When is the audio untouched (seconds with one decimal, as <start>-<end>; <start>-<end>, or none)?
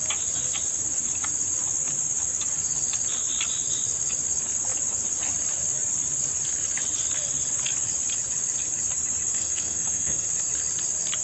0.0-9.3; 10.3-11.2